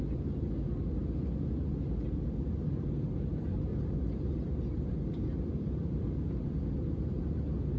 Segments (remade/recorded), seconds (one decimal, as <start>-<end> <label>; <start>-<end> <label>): 0.0-3.7 recorded; 3.7-4.4 remade; 4.4-7.8 recorded